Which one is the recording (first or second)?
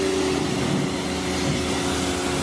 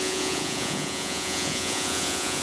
first